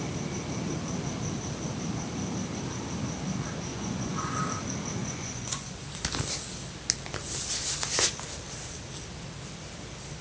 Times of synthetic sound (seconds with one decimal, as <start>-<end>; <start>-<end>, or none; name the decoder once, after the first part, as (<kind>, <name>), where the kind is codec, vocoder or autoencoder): 3.7-4.4 (vocoder, Vocos); 5.0-5.8